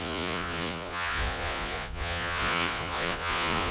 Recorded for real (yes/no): no